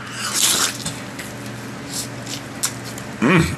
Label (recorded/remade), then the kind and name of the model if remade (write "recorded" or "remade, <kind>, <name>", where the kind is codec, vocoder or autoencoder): recorded